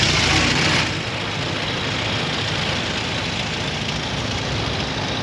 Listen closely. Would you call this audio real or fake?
real